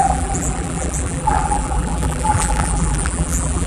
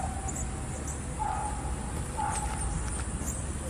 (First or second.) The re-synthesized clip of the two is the first